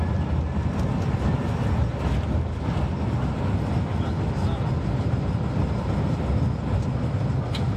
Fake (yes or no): no